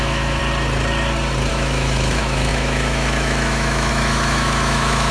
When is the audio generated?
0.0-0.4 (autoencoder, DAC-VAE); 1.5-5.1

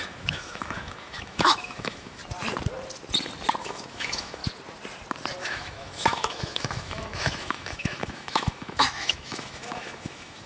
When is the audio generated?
0.0-2.2 (autoencoder, DAC-VAE); 3.6-4.4; 5.4-10.5

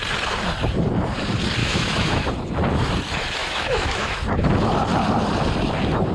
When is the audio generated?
1.6-2.3 (autoencoder, DAC-VAE); 3.4-4.2

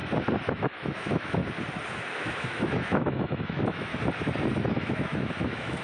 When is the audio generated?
0.5-1.4 (autoencoder, DAC-VAE); 2.2-3.9; 4.7-5.8

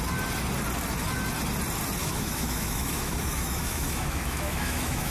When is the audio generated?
2.0-5.1 (autoencoder, DAC-VAE)